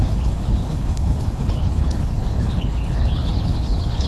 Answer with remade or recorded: remade